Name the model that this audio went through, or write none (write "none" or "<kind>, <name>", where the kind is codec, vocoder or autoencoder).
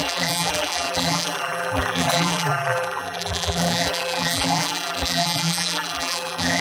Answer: vocoder, BigVGAN v2